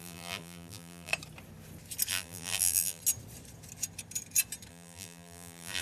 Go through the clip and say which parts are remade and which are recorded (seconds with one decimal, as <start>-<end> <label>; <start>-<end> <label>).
0.0-1.1 remade; 1.1-2.1 recorded; 2.1-3.0 remade; 3.0-4.7 recorded; 4.7-5.8 remade